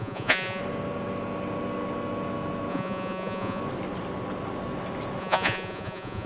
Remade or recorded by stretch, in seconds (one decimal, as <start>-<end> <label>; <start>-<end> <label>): 0.0-0.6 remade; 0.6-2.7 recorded; 2.7-3.6 remade; 3.6-5.2 recorded; 5.2-6.3 remade